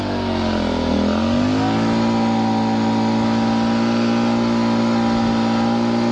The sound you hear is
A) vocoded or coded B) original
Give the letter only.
B